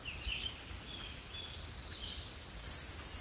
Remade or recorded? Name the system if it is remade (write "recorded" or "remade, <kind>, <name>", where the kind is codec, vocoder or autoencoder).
recorded